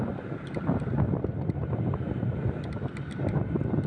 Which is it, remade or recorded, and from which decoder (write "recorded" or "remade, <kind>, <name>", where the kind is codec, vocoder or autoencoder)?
recorded